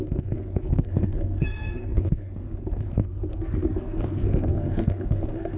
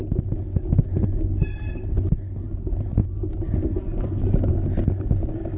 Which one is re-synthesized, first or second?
first